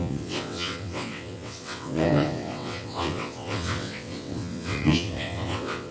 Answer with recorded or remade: remade